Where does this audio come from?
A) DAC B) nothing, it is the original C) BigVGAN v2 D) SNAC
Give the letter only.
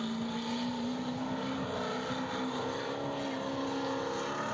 B